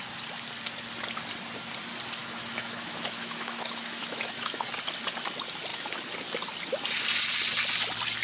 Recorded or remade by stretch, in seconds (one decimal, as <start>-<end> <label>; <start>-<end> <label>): 0.0-2.2 recorded; 2.2-4.6 remade; 4.6-8.2 recorded